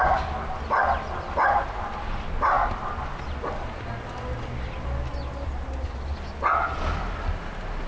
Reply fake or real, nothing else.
real